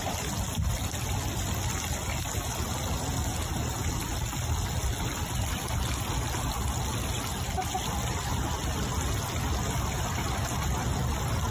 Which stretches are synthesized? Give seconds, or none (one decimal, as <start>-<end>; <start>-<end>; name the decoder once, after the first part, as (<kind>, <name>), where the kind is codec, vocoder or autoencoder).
none